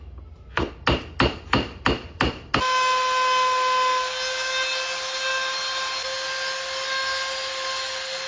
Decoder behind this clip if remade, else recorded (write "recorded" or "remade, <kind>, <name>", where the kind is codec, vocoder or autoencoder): recorded